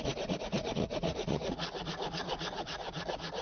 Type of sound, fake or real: fake